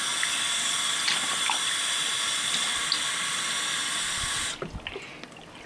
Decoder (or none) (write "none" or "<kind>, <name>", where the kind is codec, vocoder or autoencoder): none